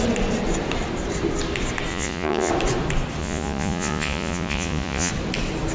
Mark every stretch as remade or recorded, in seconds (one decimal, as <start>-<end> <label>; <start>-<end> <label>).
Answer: 0.0-1.9 recorded; 1.9-2.5 remade; 2.5-3.2 recorded; 3.2-5.1 remade; 5.1-5.7 recorded